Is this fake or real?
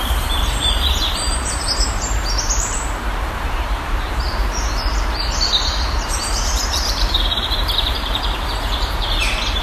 fake